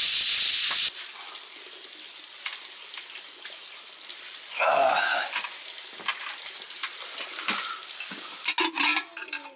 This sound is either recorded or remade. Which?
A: recorded